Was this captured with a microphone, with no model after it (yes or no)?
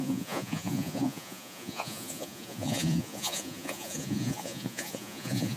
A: no